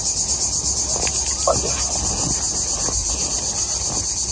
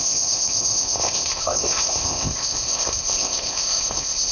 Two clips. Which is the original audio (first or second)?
first